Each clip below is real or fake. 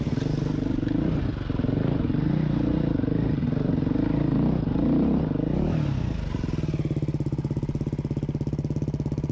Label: real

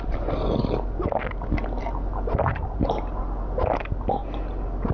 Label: real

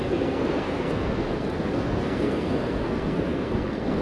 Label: fake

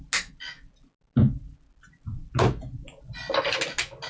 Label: real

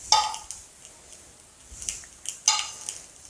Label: real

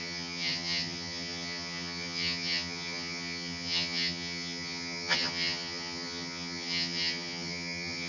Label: fake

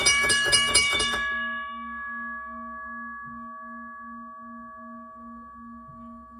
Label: fake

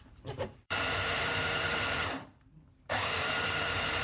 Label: fake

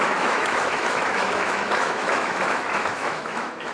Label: fake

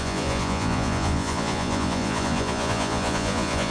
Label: fake